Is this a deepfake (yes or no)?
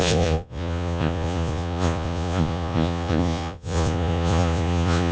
yes